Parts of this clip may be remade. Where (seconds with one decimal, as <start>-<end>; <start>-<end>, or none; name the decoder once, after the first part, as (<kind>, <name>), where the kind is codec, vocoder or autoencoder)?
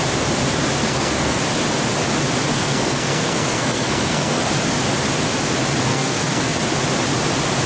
0.8-1.4 (codec, SNAC); 2.5-4.5; 5.9-6.6